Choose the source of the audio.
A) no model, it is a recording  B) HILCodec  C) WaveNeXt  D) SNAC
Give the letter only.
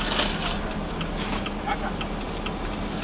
A